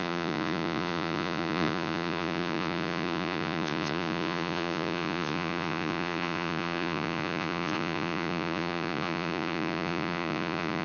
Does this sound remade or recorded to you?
remade